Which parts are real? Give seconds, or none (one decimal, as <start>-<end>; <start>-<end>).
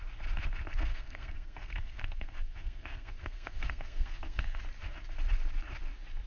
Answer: 0.0-0.8; 4.6-6.3